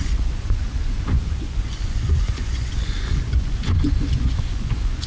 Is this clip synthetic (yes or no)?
yes